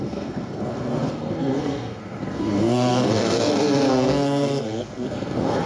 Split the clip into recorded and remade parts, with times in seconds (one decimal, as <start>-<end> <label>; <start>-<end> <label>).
0.0-5.7 remade